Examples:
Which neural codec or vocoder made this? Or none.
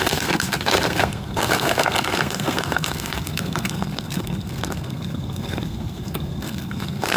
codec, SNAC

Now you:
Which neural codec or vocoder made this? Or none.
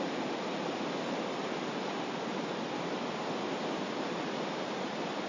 none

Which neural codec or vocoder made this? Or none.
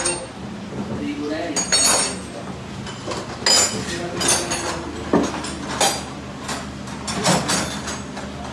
none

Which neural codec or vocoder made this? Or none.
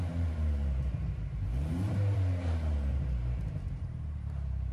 vocoder, BigVGAN v2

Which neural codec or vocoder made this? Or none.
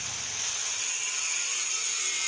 vocoder, BigVGAN v2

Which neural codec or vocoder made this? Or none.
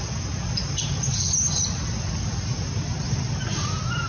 none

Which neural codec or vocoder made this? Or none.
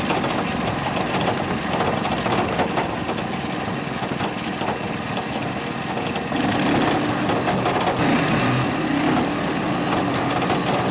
none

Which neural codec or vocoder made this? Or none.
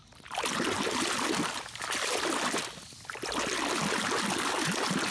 none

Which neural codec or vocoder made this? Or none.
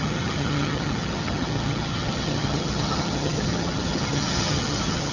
vocoder, HiFi-GAN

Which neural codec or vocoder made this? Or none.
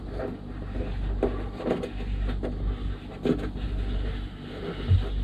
none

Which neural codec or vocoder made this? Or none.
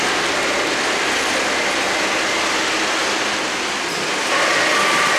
none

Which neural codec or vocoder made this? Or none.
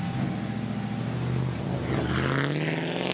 none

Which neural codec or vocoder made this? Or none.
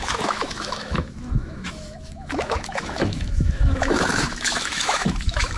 autoencoder, DAC-VAE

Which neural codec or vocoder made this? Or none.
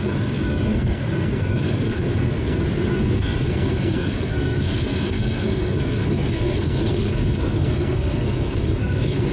codec, SNAC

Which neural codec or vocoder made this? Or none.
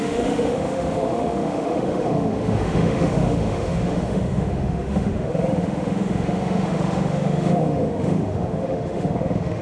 autoencoder, DAC-VAE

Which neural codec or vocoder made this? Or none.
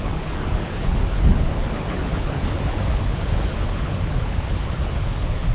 codec, HILCodec